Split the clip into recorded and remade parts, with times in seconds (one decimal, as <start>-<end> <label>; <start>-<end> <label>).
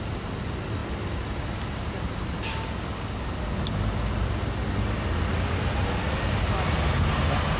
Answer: 0.0-7.6 recorded